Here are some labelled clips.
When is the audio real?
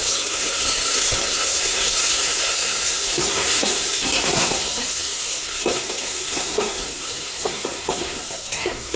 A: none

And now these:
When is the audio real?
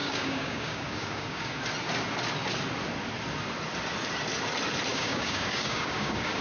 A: 1.6-4.9